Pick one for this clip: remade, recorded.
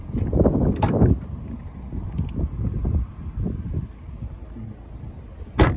recorded